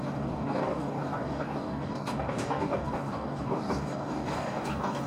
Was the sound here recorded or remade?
remade